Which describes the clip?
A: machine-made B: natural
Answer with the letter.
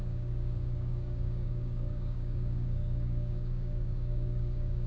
A